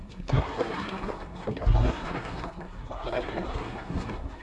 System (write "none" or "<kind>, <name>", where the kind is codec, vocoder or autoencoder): codec, SNAC